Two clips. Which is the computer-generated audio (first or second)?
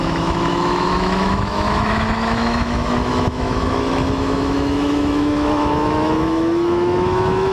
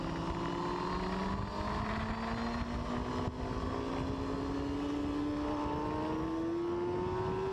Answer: first